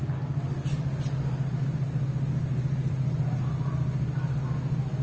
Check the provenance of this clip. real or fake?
real